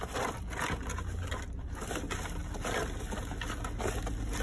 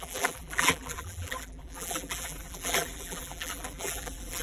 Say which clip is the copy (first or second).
second